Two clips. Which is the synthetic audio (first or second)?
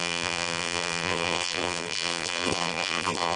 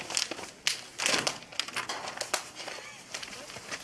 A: first